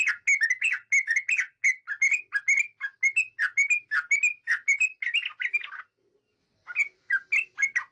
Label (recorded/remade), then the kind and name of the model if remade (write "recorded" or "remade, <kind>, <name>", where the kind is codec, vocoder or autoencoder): recorded